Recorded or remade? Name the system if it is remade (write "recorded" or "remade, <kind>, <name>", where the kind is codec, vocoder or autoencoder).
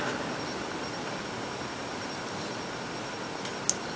recorded